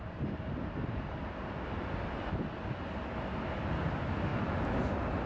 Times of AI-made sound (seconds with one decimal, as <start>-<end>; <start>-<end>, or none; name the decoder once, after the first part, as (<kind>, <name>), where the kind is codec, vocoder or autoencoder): none

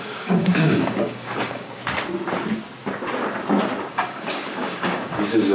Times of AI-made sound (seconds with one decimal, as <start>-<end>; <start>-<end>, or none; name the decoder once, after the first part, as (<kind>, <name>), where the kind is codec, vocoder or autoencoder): 0.0-1.8 (codec, DAC); 3.9-5.5